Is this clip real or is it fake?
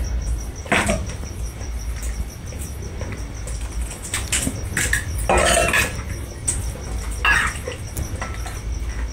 real